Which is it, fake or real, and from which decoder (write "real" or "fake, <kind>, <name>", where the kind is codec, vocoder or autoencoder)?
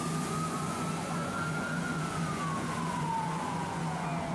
fake, vocoder, Vocos